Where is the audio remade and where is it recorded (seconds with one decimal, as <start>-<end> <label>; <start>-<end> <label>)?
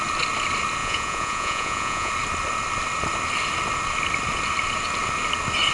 0.0-0.8 recorded; 0.8-2.1 remade; 2.1-5.7 recorded